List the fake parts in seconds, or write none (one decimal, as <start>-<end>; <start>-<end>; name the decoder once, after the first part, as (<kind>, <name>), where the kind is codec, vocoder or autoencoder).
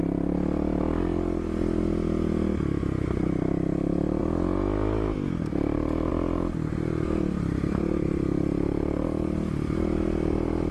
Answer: none